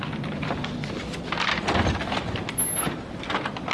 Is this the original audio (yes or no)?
yes